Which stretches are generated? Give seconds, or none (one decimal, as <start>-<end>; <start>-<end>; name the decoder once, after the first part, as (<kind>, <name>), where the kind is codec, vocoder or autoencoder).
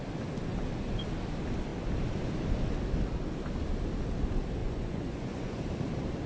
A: 4.6-5.6 (vocoder, Vocos)